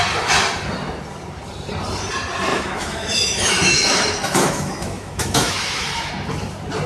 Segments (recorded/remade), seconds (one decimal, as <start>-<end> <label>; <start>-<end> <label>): 0.0-2.5 recorded; 2.5-6.1 remade; 6.1-6.9 recorded